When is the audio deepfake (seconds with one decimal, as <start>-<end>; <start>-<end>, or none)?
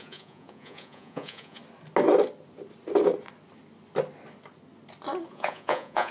0.0-1.6; 5.3-6.1